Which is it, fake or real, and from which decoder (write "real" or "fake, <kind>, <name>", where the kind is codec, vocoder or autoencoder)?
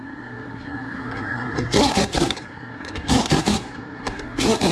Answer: fake, codec, SNAC